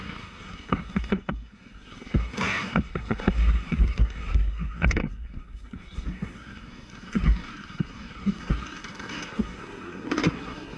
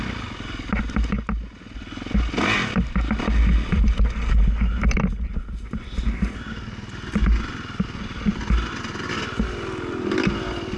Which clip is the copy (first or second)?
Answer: first